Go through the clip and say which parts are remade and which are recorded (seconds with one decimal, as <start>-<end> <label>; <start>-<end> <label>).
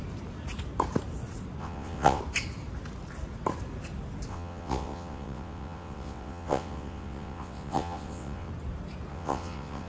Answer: 0.0-1.6 recorded; 1.6-2.2 remade; 2.2-4.3 recorded; 4.3-8.5 remade; 8.5-9.1 recorded; 9.1-9.9 remade